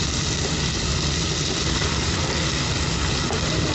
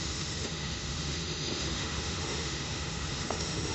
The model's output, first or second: second